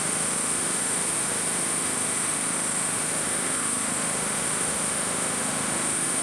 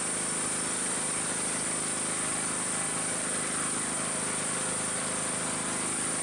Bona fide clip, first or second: second